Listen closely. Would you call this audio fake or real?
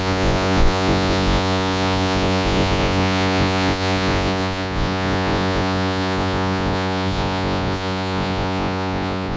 fake